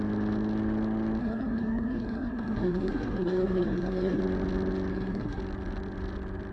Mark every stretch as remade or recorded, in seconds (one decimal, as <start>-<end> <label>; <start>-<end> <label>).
0.0-1.2 recorded; 1.2-4.2 remade; 4.2-4.9 recorded; 4.9-5.4 remade; 5.4-6.5 recorded